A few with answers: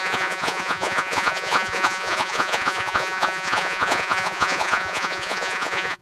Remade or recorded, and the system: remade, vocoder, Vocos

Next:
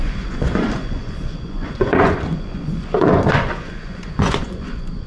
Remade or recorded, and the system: remade, vocoder, Vocos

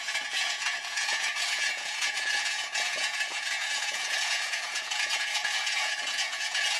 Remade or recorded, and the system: remade, vocoder, Vocos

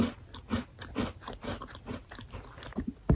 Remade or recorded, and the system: recorded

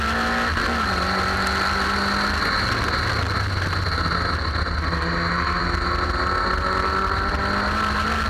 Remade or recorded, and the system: recorded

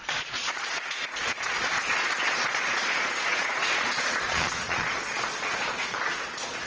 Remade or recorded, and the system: remade, vocoder, Vocos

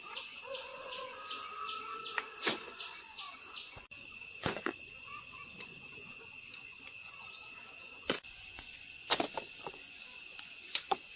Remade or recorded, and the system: remade, vocoder, Vocos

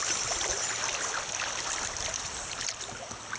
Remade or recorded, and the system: recorded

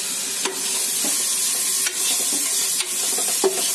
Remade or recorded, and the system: recorded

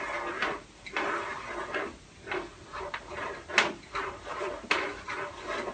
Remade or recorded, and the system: recorded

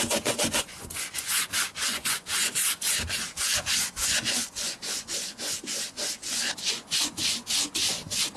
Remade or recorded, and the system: remade, vocoder, Vocos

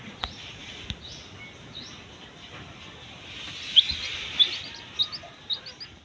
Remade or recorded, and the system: recorded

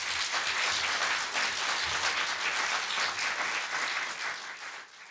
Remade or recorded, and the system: recorded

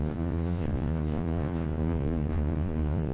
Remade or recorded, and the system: remade, vocoder, Vocos